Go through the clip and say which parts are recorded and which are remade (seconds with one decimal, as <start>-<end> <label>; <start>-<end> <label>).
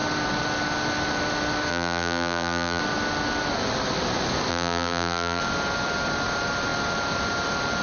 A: 0.0-1.7 recorded; 1.7-2.8 remade; 2.8-4.5 recorded; 4.5-5.4 remade; 5.4-7.8 recorded